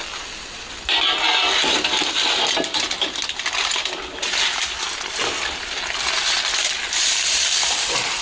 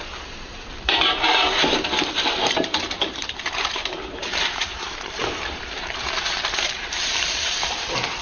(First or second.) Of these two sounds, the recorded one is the first